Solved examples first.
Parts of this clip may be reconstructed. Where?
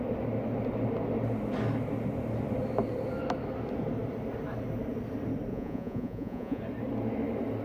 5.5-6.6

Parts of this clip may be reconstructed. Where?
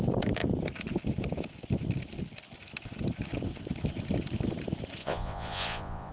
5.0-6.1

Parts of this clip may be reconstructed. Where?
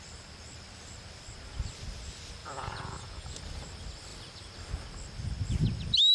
2.4-3.4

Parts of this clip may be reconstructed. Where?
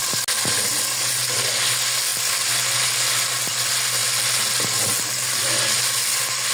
none